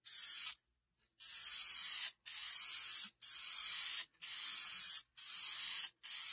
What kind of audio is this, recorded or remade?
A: recorded